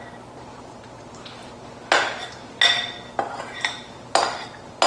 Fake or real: real